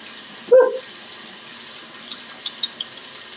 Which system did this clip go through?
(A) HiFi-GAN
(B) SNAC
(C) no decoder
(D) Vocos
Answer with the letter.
C